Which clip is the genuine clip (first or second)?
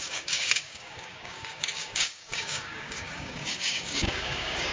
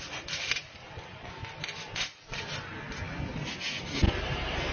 second